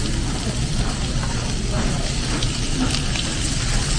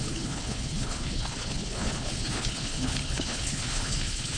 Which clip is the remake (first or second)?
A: second